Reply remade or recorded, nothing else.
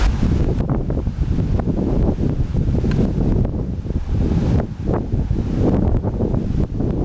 recorded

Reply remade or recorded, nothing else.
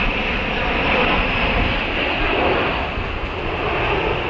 recorded